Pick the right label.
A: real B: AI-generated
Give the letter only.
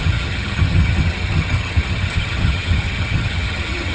B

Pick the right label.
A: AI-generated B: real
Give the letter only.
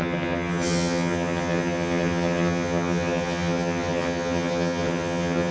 A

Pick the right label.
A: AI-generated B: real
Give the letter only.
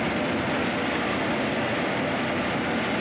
B